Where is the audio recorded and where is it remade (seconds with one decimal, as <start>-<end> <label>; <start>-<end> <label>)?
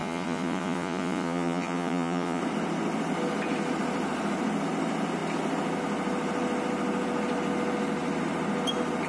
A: 0.0-2.4 remade; 2.4-9.1 recorded